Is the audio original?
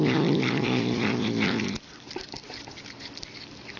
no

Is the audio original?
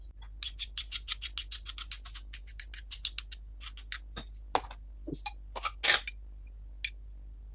yes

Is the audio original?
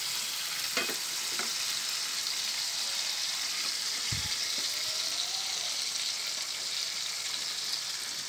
yes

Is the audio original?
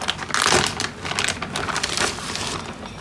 yes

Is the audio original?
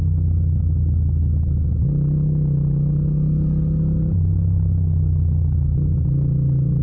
yes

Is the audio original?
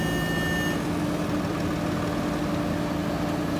yes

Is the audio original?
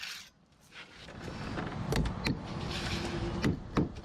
no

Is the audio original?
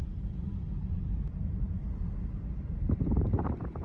no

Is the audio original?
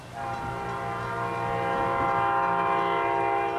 yes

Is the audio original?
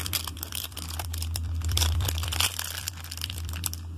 no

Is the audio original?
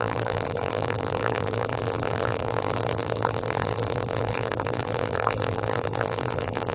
no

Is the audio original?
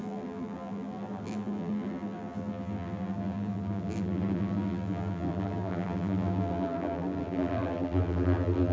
no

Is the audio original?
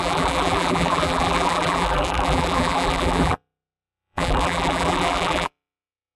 no